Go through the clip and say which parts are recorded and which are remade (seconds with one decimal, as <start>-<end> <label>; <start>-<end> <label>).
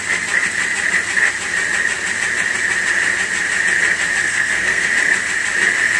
0.0-4.2 recorded; 4.2-4.9 remade; 4.9-6.0 recorded